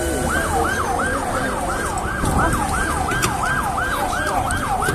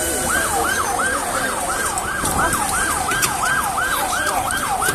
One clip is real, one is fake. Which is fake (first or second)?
second